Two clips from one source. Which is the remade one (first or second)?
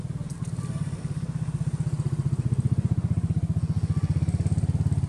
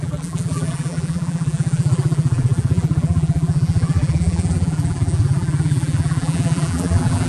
second